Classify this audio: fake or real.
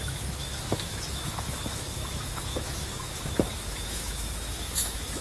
fake